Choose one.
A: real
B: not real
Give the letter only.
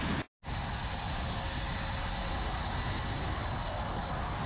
A